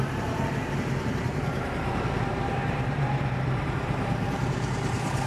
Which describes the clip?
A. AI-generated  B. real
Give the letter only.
A